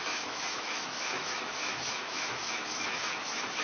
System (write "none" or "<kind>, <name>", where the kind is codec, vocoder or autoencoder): autoencoder, DAC-VAE